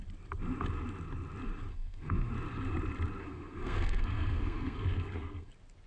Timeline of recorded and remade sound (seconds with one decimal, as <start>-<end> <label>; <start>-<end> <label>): 0.0-1.7 recorded; 1.7-2.3 remade; 2.3-3.2 recorded; 3.2-5.5 remade; 5.5-5.9 recorded